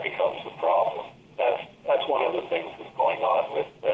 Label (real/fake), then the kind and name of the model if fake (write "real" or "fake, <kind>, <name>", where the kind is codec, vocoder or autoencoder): fake, vocoder, Vocos